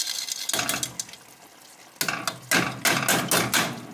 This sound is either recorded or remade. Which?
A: recorded